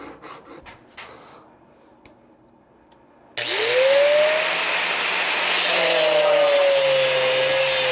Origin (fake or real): real